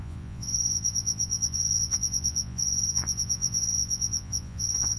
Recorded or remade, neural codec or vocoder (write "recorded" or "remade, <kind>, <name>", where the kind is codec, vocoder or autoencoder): remade, vocoder, Vocos